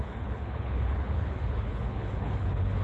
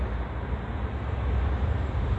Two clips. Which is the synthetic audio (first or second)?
first